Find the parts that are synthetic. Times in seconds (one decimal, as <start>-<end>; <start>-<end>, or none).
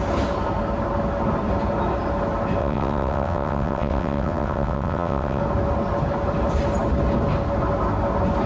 2.6-5.4